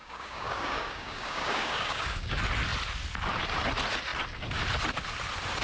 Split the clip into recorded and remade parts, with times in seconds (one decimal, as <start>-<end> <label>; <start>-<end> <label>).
0.0-2.3 remade; 2.3-5.6 recorded